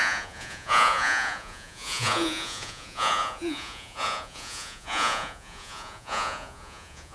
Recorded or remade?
remade